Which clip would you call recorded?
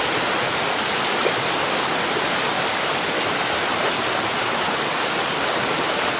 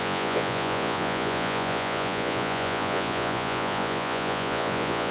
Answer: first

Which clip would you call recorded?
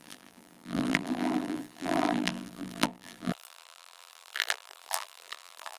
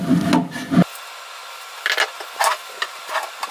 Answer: second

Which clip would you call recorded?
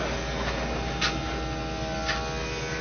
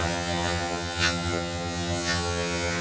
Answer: first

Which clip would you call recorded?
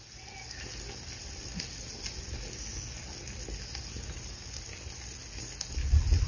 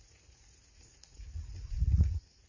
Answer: first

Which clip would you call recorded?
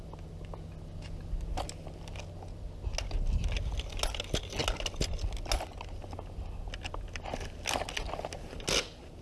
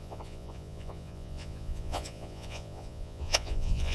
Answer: first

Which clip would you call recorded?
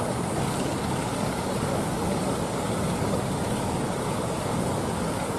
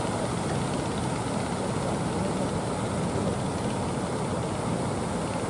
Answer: second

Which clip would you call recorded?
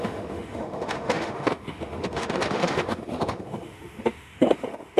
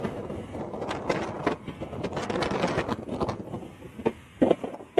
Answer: second